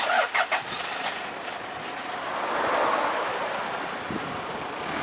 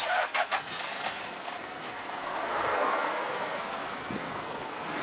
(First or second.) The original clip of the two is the first